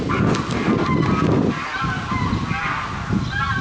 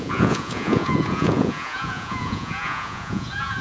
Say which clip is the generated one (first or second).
second